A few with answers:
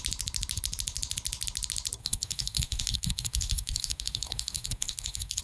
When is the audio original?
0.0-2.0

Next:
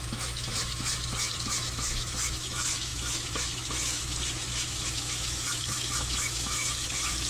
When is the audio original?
none

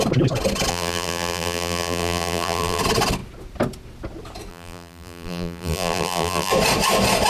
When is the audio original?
0.0-0.7; 2.8-4.5; 6.5-7.3

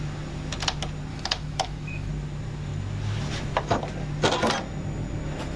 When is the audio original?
0.0-1.1; 2.1-5.6

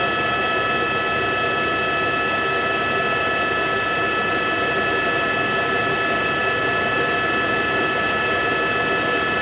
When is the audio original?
0.0-9.4

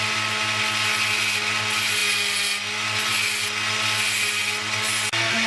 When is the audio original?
0.0-5.5

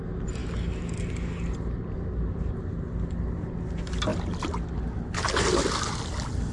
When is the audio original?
0.0-6.5

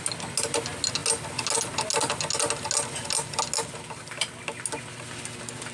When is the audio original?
0.0-5.7